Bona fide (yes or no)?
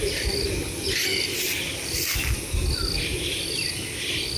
yes